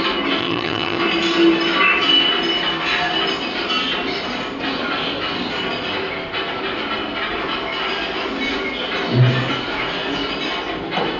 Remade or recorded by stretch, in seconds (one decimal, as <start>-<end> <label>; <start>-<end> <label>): 0.0-0.4 recorded; 0.4-1.0 remade; 1.0-11.2 recorded